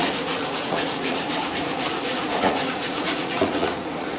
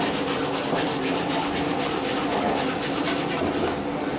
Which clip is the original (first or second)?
second